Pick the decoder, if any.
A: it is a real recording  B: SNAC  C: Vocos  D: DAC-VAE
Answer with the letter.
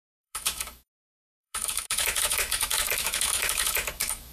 D